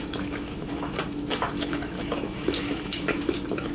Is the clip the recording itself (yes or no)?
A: no